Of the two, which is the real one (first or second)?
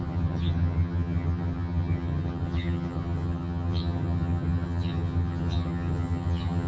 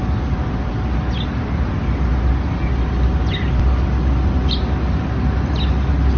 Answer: second